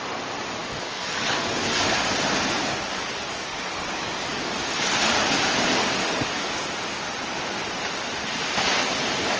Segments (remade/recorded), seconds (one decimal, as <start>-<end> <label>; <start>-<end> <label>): 0.0-0.6 recorded; 0.6-2.1 remade; 2.1-2.9 recorded; 2.9-4.6 remade; 4.6-6.0 recorded; 6.0-6.7 remade; 6.7-9.4 recorded